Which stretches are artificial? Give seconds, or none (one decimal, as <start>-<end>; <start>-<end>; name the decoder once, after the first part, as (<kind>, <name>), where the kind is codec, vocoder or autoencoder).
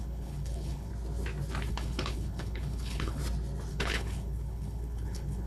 0.0-0.9 (codec, HILCodec); 1.7-3.2; 3.7-5.5